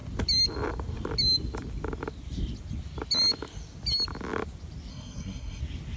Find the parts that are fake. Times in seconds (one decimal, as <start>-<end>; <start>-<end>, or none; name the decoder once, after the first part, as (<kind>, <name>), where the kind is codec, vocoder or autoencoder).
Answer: 4.9-5.6 (codec, SNAC)